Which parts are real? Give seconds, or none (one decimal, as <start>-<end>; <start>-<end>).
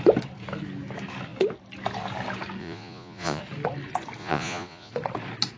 0.0-2.6; 3.4-4.2; 4.9-5.6